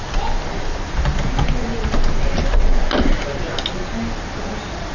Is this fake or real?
real